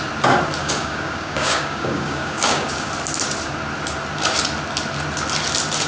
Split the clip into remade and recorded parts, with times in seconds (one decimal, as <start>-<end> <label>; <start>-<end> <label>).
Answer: 0.0-0.6 recorded; 0.6-2.9 remade; 2.9-5.9 recorded